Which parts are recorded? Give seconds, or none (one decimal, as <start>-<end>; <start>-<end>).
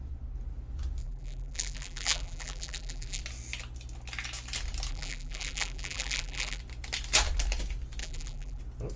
0.0-1.0; 3.2-4.9; 6.6-8.0; 8.6-9.0